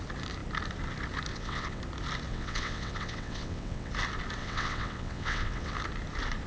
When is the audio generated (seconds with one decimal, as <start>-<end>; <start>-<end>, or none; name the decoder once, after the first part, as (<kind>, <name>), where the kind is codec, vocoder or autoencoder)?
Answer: 1.3-1.8 (vocoder, WaveNeXt); 2.3-3.9; 4.4-5.7